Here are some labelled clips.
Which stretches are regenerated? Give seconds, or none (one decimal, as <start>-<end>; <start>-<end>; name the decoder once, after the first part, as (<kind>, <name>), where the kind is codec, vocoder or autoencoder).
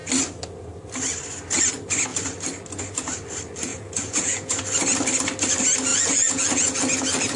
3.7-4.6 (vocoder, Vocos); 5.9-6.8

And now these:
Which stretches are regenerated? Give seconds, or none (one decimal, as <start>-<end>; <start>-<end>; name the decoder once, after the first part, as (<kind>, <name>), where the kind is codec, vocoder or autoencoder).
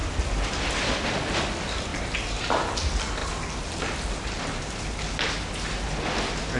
none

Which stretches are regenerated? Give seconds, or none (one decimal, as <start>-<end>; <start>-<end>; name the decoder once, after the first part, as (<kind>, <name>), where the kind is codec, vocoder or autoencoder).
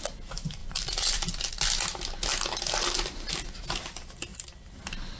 0.6-1.5 (vocoder, BigVGAN v2); 4.3-4.8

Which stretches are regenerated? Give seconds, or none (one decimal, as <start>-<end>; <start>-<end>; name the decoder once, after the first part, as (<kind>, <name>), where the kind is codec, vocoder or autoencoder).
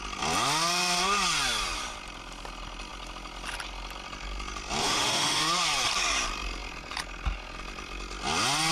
4.8-5.4 (autoencoder, DAC-VAE)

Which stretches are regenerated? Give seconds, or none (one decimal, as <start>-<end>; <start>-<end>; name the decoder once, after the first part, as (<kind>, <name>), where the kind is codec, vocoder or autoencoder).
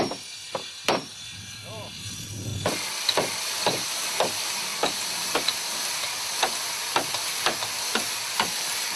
0.0-2.5 (vocoder, BigVGAN v2); 3.4-9.0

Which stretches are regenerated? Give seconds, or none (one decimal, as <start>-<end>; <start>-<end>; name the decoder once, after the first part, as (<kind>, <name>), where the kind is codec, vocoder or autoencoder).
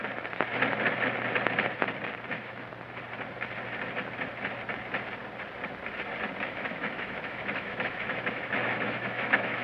2.3-2.7 (autoencoder, DAC-VAE); 6.4-9.6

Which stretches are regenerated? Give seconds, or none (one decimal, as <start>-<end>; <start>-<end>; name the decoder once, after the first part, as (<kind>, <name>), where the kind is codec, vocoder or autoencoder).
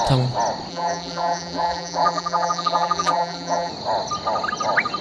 0.7-3.7 (vocoder, BigVGAN v2)